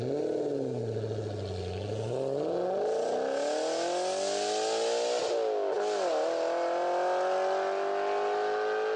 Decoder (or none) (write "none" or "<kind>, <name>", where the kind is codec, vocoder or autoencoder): none